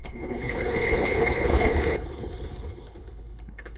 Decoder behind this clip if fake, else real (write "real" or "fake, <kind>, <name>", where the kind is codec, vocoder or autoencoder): fake, codec, HILCodec